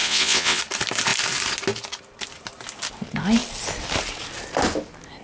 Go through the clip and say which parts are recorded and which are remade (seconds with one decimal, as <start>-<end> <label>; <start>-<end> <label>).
0.0-0.6 remade; 0.6-5.2 recorded